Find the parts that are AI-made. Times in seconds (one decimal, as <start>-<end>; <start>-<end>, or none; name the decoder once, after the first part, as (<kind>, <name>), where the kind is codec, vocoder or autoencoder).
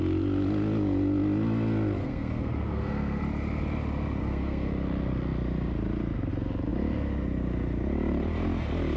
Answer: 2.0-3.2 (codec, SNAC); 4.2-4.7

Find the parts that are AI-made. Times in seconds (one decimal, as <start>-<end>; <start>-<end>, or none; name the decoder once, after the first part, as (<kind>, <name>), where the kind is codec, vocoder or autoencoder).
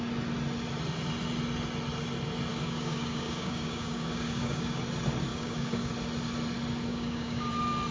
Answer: 2.5-4.8 (codec, DAC); 5.3-5.9; 6.9-7.5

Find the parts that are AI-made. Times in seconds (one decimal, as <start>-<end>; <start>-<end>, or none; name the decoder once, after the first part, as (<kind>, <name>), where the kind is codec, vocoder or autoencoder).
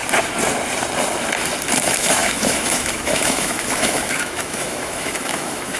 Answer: 1.8-5.8 (autoencoder, DAC-VAE)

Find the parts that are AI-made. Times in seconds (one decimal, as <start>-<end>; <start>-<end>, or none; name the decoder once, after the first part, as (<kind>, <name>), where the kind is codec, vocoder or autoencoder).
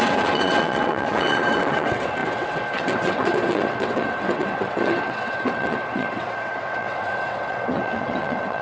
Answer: 0.0-8.6 (vocoder, WaveNeXt)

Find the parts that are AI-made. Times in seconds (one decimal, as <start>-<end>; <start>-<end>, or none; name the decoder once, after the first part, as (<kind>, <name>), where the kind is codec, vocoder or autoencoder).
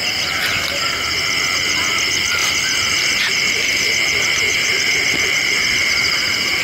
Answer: 2.4-6.6 (vocoder, BigVGAN v2)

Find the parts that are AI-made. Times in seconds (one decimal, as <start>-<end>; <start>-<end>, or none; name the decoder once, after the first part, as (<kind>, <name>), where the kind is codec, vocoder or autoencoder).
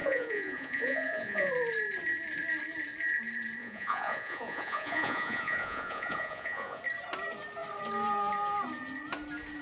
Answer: 0.0-1.5 (vocoder, Vocos); 3.6-6.8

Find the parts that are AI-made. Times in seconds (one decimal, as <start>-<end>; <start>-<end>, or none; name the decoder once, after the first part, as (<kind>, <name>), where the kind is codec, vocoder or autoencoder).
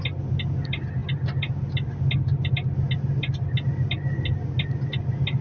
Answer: none